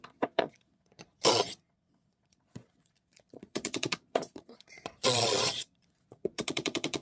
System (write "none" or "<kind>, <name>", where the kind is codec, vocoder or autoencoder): vocoder, Vocos